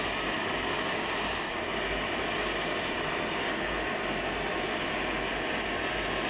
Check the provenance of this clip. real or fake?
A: real